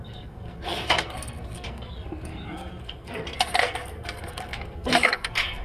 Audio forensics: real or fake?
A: fake